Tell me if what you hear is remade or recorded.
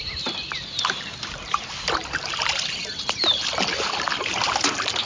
recorded